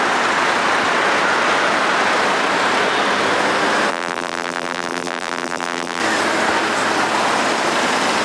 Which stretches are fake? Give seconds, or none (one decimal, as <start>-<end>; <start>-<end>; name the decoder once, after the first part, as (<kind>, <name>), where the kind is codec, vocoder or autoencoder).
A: 3.9-6.0 (vocoder, BigVGAN v2)